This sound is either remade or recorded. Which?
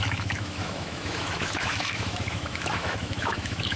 remade